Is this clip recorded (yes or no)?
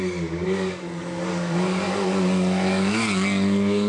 no